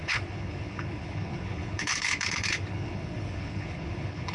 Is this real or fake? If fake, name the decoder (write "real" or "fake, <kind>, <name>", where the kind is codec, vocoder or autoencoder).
fake, codec, HILCodec